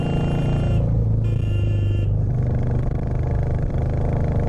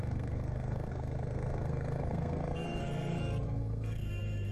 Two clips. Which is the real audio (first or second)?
first